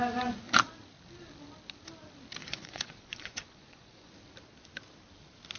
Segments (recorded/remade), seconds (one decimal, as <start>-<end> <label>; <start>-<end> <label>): 0.0-2.4 recorded; 2.4-4.1 remade; 4.1-5.6 recorded